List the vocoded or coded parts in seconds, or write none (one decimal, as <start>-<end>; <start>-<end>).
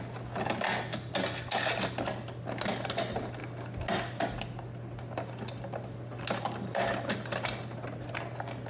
none